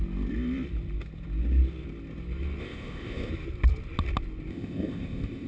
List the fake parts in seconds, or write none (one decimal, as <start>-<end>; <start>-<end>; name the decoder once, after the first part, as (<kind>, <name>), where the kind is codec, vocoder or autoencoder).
2.6-3.3 (codec, ZipCodec); 4.5-5.5